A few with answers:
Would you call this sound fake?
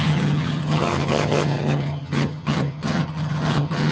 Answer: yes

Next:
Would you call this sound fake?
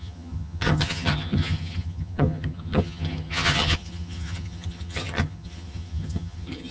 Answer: yes